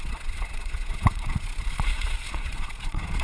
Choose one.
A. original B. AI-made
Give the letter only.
B